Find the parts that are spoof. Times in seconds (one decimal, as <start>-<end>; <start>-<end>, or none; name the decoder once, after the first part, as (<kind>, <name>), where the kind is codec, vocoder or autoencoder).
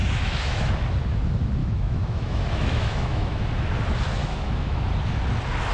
0.0-0.7 (autoencoder, DAC-VAE); 1.6-3.4; 4.2-4.9